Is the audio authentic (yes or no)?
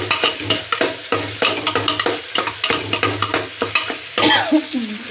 yes